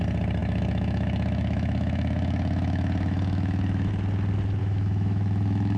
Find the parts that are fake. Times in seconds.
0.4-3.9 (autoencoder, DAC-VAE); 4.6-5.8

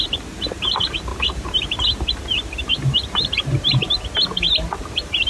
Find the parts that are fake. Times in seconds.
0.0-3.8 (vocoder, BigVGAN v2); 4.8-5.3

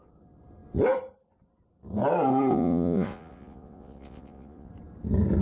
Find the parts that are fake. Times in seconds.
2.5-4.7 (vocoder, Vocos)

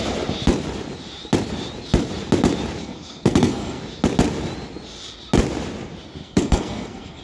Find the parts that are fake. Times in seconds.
2.8-3.8 (codec, SNAC); 6.2-7.2